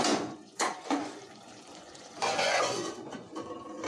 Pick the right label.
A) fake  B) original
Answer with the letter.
A